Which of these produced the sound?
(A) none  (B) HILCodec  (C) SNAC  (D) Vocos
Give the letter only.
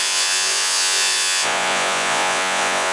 D